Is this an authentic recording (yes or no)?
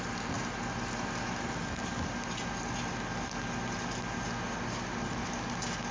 yes